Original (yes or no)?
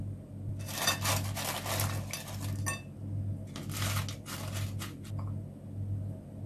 yes